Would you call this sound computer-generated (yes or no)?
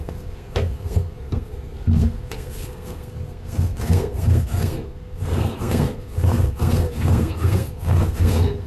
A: yes